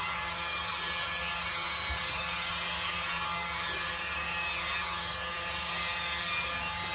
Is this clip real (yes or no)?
no